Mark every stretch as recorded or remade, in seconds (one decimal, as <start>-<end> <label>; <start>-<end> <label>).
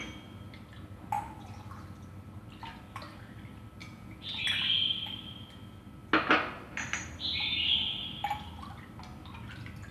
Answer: 0.0-3.8 recorded; 3.8-4.3 remade; 4.3-9.9 recorded